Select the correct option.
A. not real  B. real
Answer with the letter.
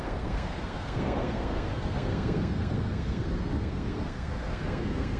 A